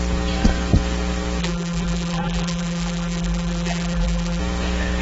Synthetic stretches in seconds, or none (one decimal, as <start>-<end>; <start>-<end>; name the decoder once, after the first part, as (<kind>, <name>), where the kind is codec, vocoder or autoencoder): 1.4-4.4 (vocoder, BigVGAN v2)